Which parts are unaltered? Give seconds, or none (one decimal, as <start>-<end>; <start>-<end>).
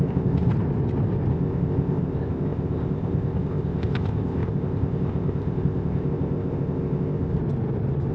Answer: 0.5-1.3; 7.4-8.1